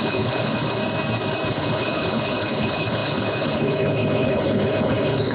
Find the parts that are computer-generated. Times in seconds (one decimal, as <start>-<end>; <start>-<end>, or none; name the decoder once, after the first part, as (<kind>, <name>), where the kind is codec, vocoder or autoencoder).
0.0-0.8 (codec, HILCodec); 1.5-5.3